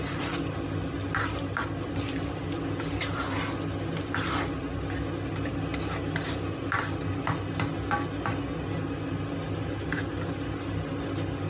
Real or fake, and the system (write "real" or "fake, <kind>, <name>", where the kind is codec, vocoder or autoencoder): real